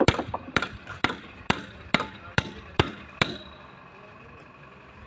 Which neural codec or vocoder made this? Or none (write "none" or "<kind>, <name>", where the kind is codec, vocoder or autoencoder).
vocoder, BigVGAN v2